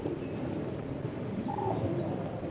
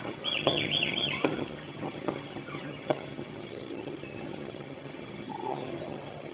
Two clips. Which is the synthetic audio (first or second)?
second